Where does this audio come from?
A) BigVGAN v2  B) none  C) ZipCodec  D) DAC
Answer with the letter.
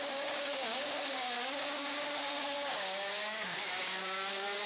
D